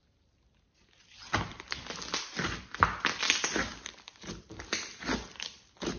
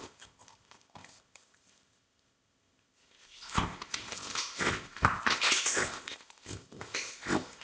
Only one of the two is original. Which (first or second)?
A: first